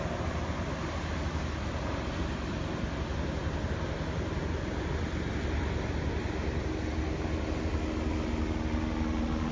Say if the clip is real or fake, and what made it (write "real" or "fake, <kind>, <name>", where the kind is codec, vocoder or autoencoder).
real